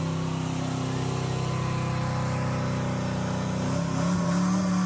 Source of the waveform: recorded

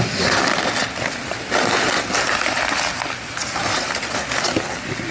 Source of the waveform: recorded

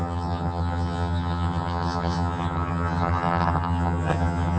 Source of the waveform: remade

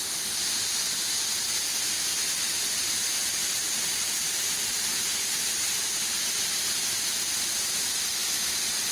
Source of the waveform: recorded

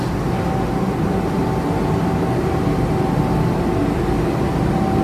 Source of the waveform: recorded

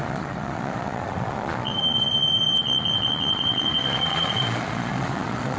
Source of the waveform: remade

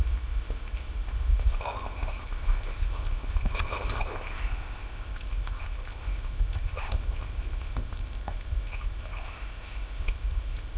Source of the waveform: remade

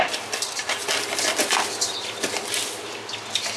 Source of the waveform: recorded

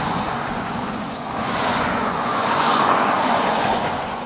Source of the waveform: remade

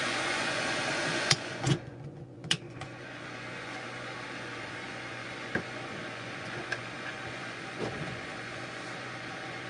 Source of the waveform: remade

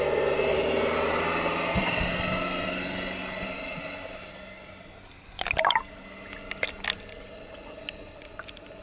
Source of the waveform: recorded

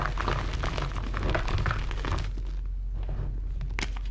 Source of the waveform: recorded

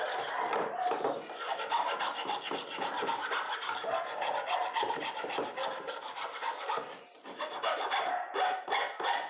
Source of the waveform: remade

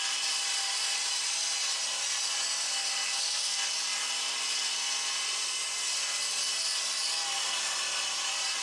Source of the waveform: recorded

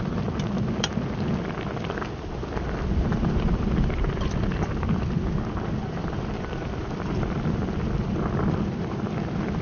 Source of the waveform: remade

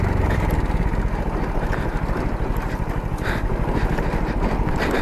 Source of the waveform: recorded